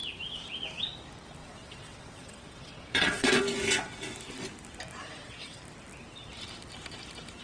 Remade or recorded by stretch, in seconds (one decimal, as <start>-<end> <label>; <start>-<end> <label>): 0.0-1.4 recorded; 1.4-3.4 remade; 3.4-5.0 recorded; 5.0-5.6 remade; 5.6-7.4 recorded